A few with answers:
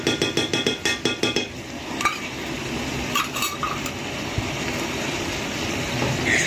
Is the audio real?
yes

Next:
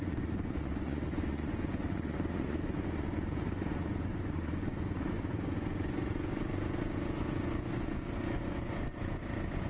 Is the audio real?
no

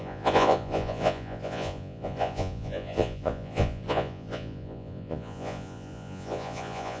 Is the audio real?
no